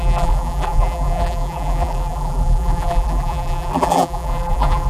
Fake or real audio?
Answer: fake